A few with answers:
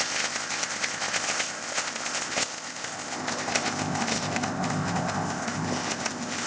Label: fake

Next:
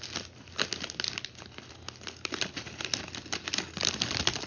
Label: real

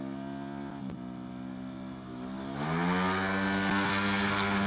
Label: real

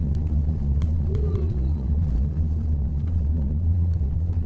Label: fake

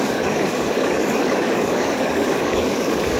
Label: fake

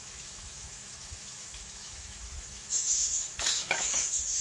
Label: fake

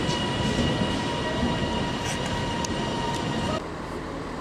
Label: real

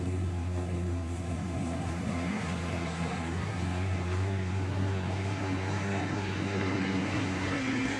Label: fake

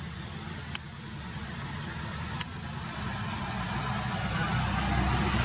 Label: real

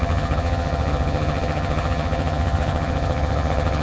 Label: fake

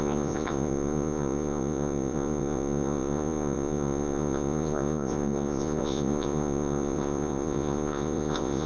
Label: fake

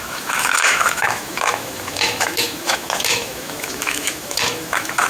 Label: fake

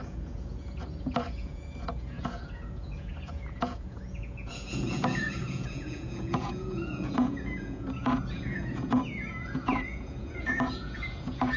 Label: fake